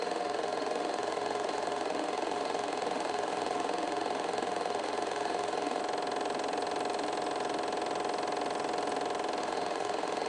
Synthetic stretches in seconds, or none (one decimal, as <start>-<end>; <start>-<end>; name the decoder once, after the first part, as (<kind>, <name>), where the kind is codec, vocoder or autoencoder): 0.0-5.8 (autoencoder, DAC-VAE); 9.4-10.3